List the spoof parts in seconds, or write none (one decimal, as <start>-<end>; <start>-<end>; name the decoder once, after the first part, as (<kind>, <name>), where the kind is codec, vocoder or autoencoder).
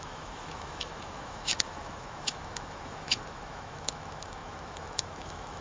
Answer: 0.0-5.6 (autoencoder, DAC-VAE)